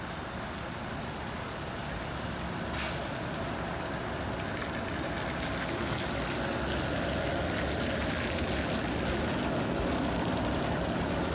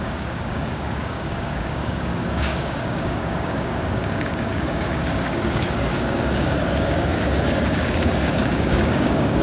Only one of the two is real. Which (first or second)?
first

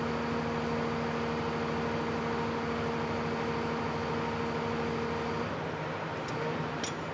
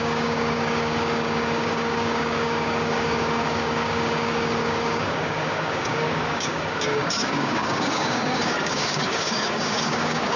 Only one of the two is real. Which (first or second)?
first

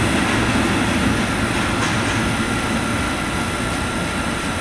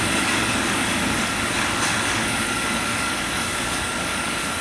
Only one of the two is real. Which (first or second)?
first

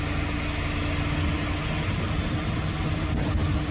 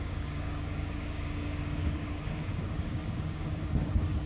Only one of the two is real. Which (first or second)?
first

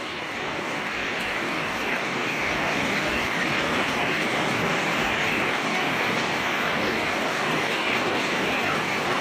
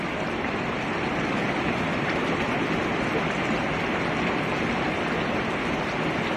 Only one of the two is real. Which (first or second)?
second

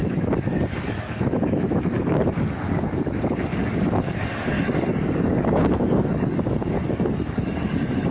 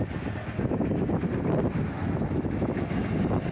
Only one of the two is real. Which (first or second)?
second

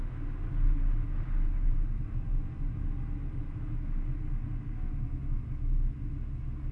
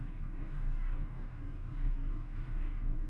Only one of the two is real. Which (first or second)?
first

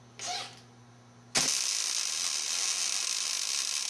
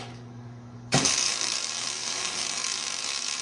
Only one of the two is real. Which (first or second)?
first